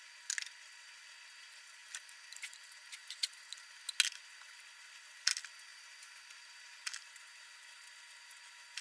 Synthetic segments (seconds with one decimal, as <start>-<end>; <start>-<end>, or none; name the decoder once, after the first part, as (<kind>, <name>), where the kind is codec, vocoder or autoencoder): none